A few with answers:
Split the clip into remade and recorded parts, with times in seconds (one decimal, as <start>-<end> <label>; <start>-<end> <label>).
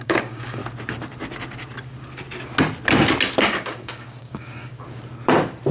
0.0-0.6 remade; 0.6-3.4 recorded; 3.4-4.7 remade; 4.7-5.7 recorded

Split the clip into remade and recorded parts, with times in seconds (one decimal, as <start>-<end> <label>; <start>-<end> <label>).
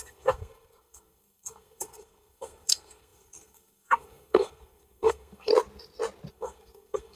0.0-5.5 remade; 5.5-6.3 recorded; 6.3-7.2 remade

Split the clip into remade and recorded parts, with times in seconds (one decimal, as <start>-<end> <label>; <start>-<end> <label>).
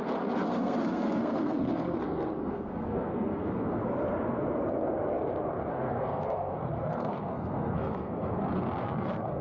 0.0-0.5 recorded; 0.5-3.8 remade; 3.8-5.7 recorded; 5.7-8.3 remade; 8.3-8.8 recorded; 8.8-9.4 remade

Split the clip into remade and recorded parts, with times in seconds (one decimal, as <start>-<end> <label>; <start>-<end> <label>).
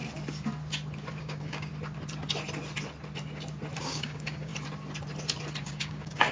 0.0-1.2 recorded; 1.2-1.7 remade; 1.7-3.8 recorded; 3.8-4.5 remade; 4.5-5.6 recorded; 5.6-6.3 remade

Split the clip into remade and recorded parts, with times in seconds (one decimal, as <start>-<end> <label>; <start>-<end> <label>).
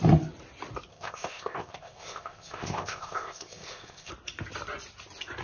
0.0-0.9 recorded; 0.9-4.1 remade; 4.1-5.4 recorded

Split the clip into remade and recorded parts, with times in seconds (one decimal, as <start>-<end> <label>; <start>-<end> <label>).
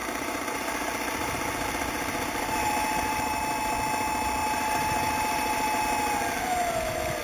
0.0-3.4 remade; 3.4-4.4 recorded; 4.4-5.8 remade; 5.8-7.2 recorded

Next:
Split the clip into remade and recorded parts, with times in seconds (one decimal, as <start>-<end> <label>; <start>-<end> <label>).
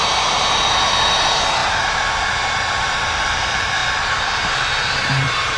0.0-5.6 remade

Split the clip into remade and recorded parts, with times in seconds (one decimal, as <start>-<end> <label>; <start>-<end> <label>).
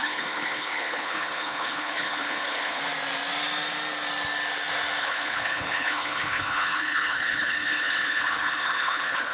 0.0-2.8 remade; 2.8-5.0 recorded; 5.0-9.3 remade